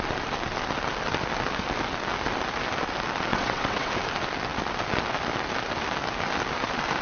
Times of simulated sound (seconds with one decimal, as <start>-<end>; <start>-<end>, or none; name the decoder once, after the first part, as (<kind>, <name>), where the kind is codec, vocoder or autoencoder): 3.3-3.9 (vocoder, WaveNeXt)